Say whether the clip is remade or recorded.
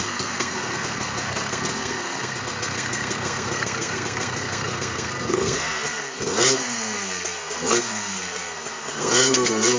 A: remade